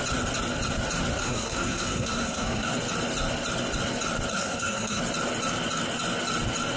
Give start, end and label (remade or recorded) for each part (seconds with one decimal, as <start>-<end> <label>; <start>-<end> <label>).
0.0-1.2 recorded; 1.2-2.7 remade; 2.7-4.3 recorded; 4.3-5.0 remade; 5.0-6.8 recorded